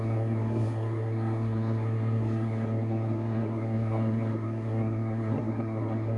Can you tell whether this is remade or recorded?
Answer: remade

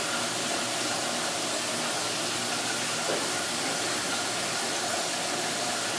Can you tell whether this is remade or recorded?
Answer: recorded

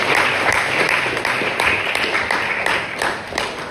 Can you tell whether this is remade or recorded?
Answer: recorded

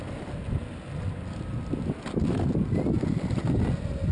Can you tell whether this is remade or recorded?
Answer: recorded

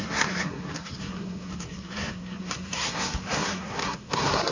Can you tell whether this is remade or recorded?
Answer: remade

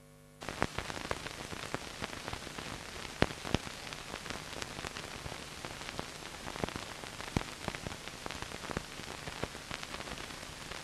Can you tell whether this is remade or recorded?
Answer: recorded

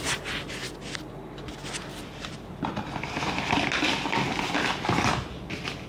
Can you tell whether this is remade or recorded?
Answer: recorded